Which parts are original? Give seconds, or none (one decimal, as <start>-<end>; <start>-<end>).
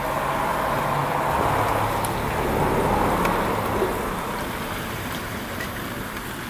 0.0-3.9; 5.8-6.5